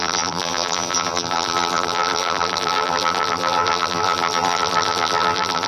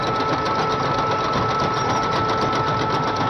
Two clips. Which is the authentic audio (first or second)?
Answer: second